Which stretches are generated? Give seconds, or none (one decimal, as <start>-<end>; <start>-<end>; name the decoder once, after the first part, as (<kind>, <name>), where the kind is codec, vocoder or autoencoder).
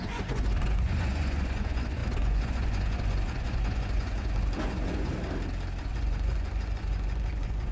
0.0-5.1 (vocoder, Vocos); 5.8-7.7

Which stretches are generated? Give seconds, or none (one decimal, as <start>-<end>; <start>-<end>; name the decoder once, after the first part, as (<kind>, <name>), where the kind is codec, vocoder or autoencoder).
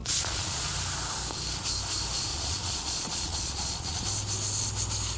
0.0-0.7 (vocoder, Vocos); 2.3-4.0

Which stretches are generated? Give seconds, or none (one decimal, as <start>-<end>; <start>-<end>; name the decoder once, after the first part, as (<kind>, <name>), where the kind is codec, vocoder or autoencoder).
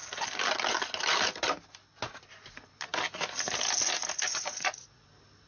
4.3-5.1 (vocoder, Vocos)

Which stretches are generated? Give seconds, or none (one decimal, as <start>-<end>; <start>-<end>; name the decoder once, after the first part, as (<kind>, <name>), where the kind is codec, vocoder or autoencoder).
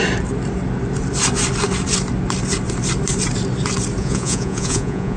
4.0-5.2 (vocoder, Vocos)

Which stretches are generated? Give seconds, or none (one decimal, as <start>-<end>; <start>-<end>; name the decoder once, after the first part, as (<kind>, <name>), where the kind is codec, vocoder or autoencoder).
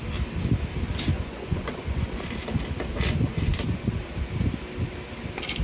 1.1-2.1 (vocoder, Vocos); 3.3-4.0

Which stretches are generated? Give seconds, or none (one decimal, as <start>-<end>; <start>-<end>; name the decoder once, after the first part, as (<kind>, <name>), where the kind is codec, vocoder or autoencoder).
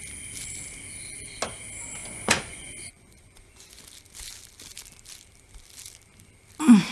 2.0-3.8 (vocoder, Vocos)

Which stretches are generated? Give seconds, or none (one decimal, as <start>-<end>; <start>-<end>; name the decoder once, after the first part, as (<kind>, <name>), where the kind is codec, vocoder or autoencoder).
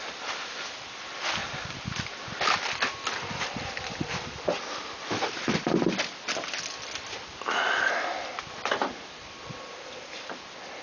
none